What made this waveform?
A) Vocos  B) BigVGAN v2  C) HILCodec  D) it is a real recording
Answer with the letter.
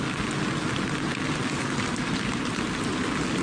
D